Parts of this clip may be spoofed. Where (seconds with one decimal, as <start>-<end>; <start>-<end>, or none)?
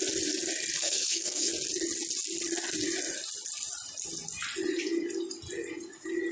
0.8-1.5